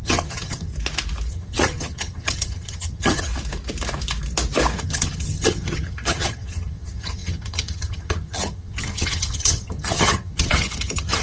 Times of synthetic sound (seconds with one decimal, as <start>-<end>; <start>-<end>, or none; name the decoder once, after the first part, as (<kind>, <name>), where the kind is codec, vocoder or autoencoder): 0.0-0.7 (vocoder, HiFi-GAN); 1.3-3.3; 4.8-11.2